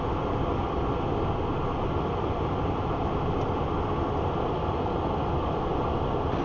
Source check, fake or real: real